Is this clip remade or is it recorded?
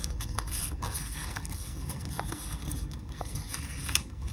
remade